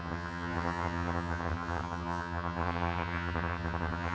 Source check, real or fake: fake